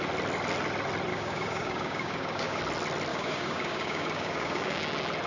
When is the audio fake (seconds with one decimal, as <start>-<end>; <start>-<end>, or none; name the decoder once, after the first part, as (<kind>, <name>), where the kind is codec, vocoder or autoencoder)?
1.1-2.6 (codec, DAC); 3.1-4.8